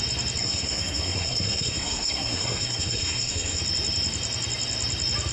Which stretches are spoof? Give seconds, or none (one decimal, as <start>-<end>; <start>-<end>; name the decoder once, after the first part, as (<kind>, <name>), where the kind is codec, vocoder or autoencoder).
0.4-3.6 (codec, SNAC)